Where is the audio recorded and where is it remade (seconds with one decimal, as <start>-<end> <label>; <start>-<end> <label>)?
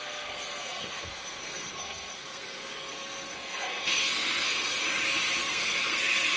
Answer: 0.0-4.8 remade; 4.8-5.4 recorded; 5.4-6.4 remade